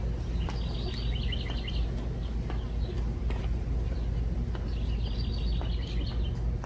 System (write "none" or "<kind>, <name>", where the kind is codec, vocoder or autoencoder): none